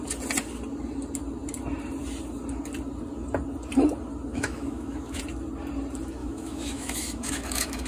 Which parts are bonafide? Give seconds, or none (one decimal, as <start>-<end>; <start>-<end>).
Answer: 0.0-4.3; 5.2-6.2